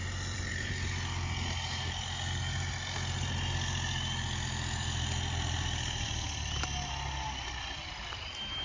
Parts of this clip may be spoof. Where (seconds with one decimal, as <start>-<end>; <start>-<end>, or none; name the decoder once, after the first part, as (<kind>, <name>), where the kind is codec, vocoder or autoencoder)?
0.0-0.7 (vocoder, BigVGAN v2)